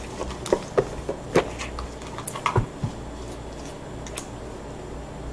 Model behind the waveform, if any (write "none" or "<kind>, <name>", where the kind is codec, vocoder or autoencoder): none